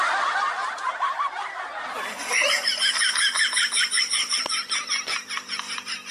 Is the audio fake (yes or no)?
no